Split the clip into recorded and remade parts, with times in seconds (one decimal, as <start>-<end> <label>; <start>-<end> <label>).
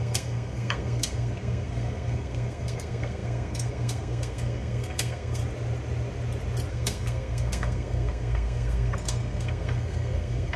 0.0-5.4 remade; 5.4-6.7 recorded; 6.7-10.6 remade